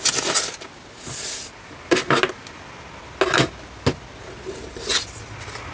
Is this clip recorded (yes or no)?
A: yes